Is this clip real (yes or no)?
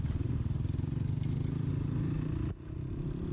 yes